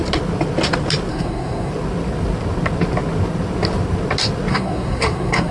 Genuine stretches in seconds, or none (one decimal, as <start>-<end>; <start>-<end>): 0.0-1.1; 1.7-4.5